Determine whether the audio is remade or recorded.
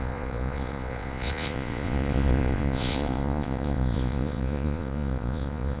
remade